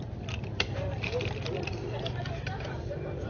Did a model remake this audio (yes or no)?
yes